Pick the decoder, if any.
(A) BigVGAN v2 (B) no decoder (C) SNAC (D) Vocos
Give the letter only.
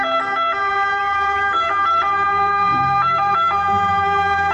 A